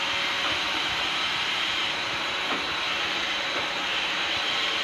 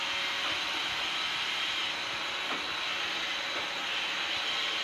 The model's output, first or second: first